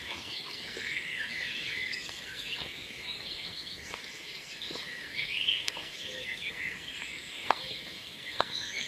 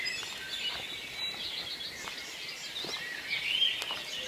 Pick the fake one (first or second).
first